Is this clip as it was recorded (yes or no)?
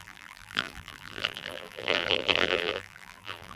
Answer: no